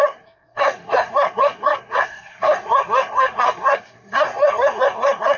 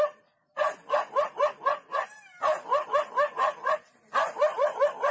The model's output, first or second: first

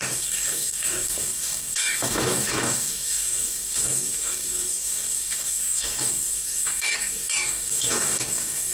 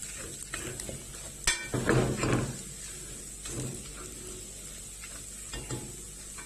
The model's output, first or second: first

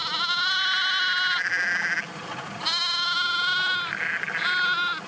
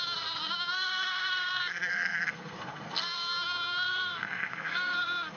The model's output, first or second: second